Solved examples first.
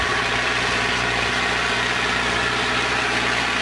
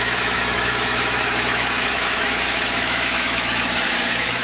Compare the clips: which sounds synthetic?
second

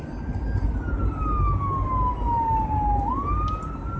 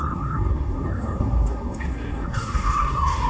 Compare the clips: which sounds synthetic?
second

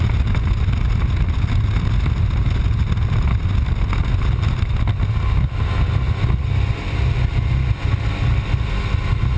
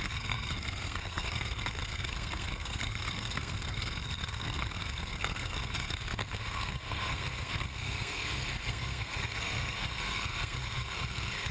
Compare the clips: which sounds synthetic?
second